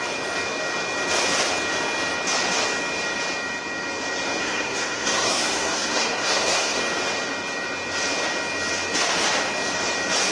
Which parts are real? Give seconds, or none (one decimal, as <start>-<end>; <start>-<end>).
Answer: 0.0-4.4; 6.8-10.3